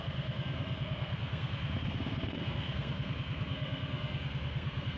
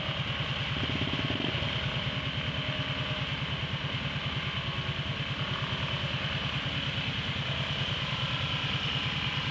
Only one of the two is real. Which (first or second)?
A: second